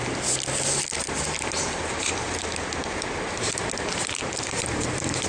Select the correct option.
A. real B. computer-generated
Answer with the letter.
A